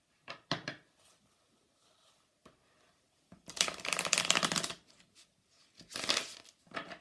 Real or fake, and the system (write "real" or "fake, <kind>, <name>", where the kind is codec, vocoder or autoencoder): real